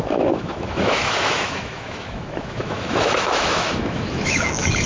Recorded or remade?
remade